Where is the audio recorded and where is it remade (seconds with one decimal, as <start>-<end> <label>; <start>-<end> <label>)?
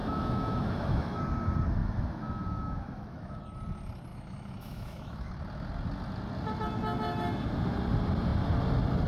0.0-1.2 remade; 1.2-1.8 recorded; 1.8-3.4 remade; 3.4-4.1 recorded; 4.1-5.3 remade; 5.3-9.1 recorded